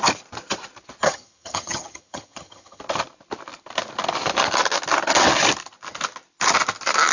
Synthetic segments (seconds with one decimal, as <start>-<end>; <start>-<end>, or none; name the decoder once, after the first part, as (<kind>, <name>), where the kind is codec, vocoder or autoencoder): 1.0-2.8 (vocoder, HiFi-GAN)